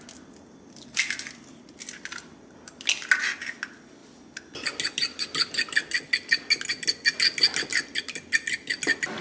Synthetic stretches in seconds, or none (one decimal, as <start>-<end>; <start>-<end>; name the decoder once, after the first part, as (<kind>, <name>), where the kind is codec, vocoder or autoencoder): none